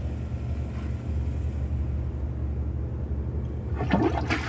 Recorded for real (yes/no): yes